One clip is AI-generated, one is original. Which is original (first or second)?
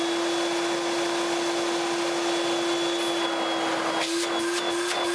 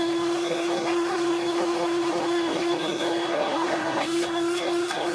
first